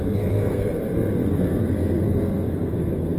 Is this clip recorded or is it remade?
remade